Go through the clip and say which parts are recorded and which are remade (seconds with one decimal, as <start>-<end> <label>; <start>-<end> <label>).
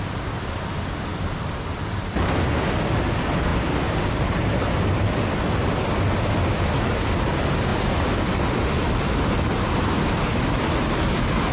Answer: 0.0-11.5 recorded